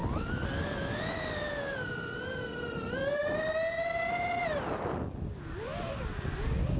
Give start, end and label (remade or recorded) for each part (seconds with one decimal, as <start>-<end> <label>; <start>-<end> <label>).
0.0-6.8 recorded